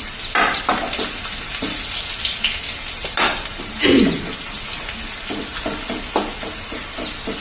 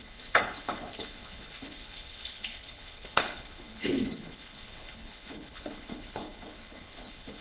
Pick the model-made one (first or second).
second